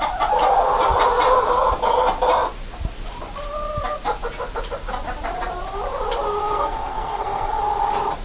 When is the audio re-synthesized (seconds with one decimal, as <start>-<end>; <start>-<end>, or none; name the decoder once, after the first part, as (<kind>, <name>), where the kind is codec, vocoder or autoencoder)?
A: 6.4-7.6 (codec, SNAC)